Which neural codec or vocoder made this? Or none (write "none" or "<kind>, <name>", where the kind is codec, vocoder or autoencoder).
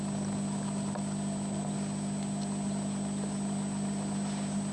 none